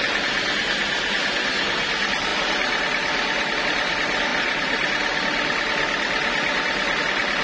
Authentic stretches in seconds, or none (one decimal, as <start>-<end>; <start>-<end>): 0.0-7.4

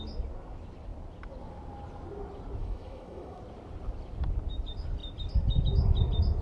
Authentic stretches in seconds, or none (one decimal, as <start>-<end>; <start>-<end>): 0.0-2.6; 3.4-6.4

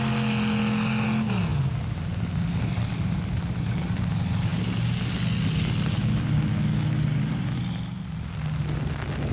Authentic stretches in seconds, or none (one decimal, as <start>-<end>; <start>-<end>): 0.0-9.3

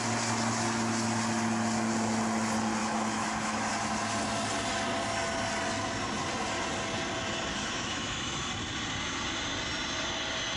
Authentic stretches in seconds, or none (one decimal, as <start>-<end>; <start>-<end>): 0.0-2.8; 3.7-7.5; 8.5-10.6

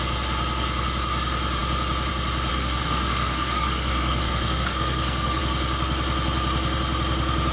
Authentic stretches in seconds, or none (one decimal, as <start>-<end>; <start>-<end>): 0.0-2.5; 5.4-7.5